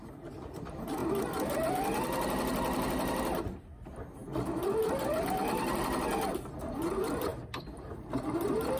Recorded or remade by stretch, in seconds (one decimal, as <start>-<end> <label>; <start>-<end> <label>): 0.0-1.0 recorded; 1.0-1.8 remade; 1.8-7.3 recorded; 7.3-8.0 remade; 8.0-8.8 recorded